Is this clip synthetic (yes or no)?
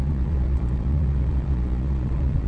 yes